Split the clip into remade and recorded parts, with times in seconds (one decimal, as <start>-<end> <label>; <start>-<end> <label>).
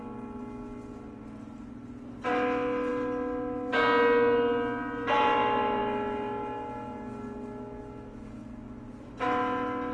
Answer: 0.0-9.9 recorded